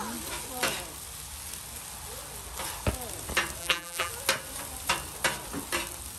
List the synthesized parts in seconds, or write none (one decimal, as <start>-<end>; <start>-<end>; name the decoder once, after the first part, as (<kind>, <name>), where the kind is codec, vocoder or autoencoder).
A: 3.6-4.1 (vocoder, BigVGAN v2)